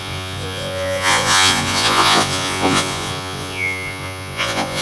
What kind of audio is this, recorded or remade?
remade